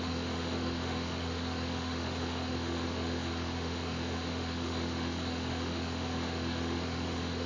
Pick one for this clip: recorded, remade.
remade